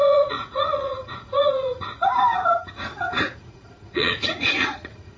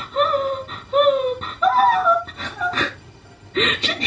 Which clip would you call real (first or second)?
second